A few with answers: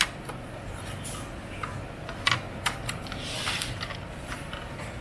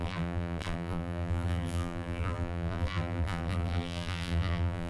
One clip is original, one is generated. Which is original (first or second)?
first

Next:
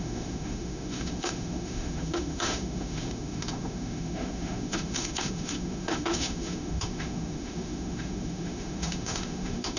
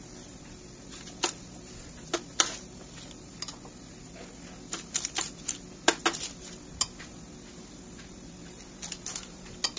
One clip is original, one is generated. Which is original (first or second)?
second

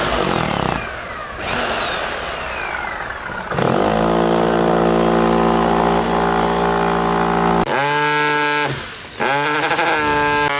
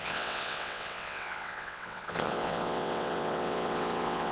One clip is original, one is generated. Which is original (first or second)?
first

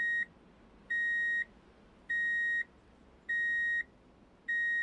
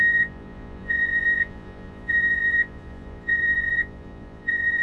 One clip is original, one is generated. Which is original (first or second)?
first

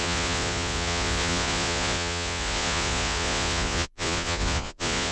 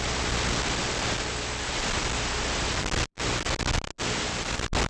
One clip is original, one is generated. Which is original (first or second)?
second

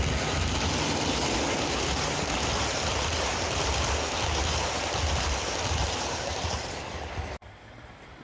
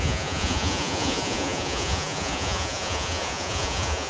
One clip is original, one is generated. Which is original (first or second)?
first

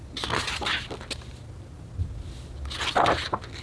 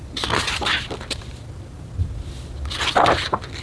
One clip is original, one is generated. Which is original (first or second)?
first